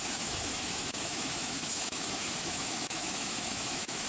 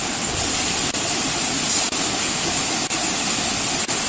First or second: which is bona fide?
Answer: second